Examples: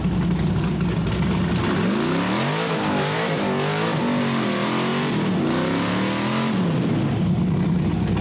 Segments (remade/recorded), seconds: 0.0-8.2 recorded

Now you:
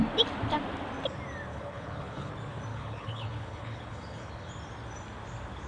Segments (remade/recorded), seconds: 0.0-1.5 recorded; 1.5-2.3 remade; 2.3-2.7 recorded; 2.7-4.5 remade; 4.5-5.7 recorded

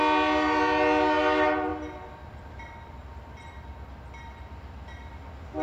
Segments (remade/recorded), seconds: 0.0-5.6 recorded

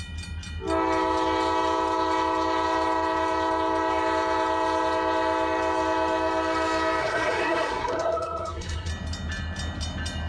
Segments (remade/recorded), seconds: 0.0-7.0 recorded; 7.0-8.9 remade; 8.9-10.3 recorded

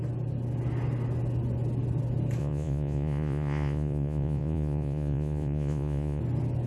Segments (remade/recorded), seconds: 0.0-2.4 recorded; 2.4-6.2 remade; 6.2-6.7 recorded

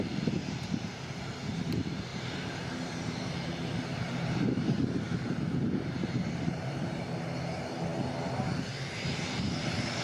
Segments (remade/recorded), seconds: 0.0-0.4 recorded; 0.4-1.2 remade; 1.2-2.1 recorded; 2.1-4.8 remade; 4.8-6.0 recorded; 6.0-7.0 remade; 7.0-10.0 recorded